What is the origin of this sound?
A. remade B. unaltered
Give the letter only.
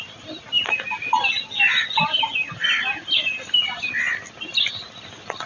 B